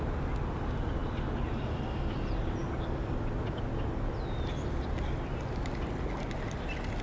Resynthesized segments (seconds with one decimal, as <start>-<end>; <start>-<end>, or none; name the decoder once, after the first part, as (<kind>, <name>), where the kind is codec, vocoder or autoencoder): none